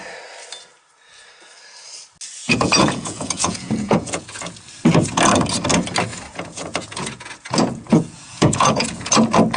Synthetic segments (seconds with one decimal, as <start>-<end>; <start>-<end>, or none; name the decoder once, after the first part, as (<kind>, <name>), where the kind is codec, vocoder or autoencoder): 2.4-4.6 (vocoder, Vocos); 6.1-9.1